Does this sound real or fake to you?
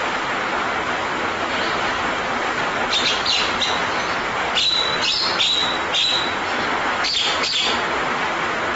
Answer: real